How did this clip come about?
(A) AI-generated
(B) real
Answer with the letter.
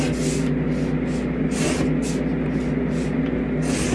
B